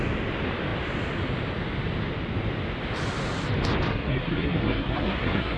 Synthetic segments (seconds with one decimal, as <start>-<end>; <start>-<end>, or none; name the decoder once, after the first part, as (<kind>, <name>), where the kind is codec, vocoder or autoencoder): 3.9-5.6 (codec, SNAC)